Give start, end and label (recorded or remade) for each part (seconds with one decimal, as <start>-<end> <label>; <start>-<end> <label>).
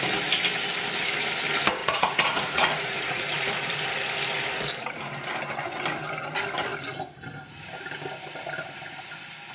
0.0-1.8 recorded; 1.8-3.5 remade; 3.5-9.5 recorded